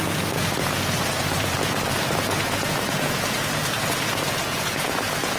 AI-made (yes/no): yes